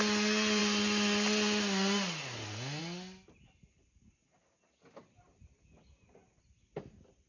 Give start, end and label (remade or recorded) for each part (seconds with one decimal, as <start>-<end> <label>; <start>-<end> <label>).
0.0-7.3 recorded